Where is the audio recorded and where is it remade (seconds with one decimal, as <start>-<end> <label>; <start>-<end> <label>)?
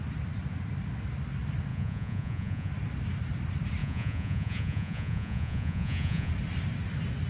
0.0-1.7 recorded; 1.7-2.7 remade; 2.7-3.8 recorded; 3.8-6.3 remade; 6.3-7.3 recorded